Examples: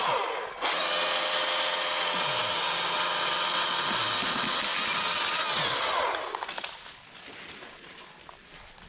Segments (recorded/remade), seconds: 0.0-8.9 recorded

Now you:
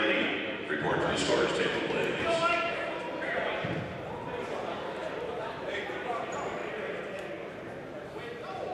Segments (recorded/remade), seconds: 0.0-6.6 remade; 6.6-8.1 recorded; 8.1-8.7 remade